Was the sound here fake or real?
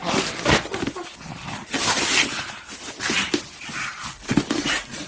real